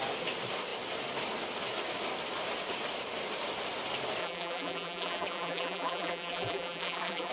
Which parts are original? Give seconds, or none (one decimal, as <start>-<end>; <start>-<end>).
0.0-4.2